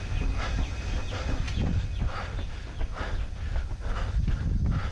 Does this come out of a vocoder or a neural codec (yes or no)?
no